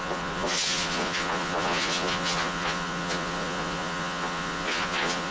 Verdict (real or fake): fake